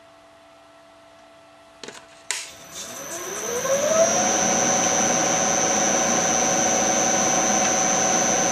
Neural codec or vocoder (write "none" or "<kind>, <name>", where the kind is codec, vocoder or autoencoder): none